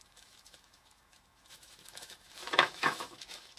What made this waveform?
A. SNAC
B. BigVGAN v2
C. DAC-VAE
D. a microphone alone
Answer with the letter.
C